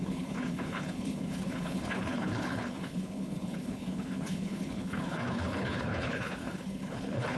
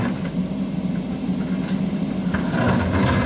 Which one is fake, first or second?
first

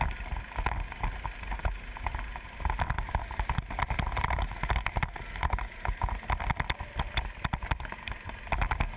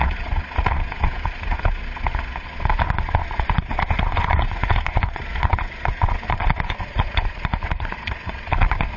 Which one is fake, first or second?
second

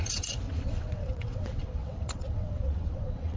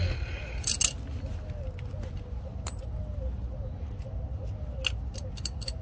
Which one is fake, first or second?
first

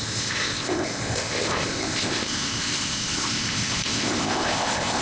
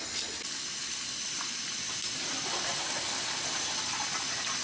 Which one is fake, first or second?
first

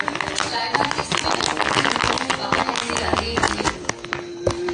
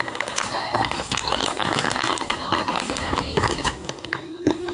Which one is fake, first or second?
second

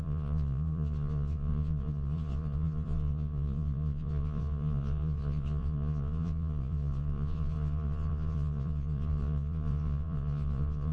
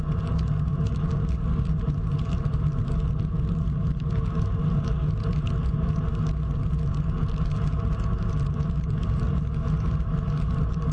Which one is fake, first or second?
first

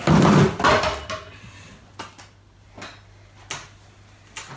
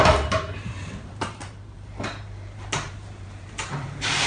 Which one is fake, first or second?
second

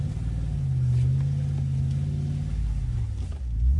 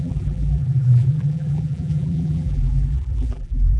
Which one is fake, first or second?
second